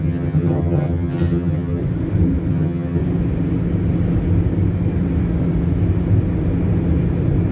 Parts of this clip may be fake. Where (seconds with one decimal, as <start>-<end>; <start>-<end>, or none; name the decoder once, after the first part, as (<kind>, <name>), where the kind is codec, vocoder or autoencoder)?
0.0-1.8 (vocoder, HiFi-GAN); 2.5-3.0